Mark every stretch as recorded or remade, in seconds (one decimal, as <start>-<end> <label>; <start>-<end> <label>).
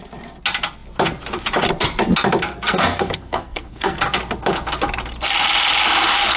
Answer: 0.0-2.5 recorded; 2.5-4.0 remade; 4.0-6.4 recorded